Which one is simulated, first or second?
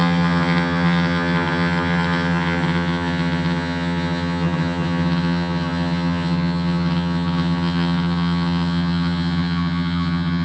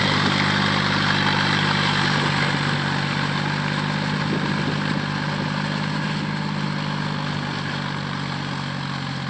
first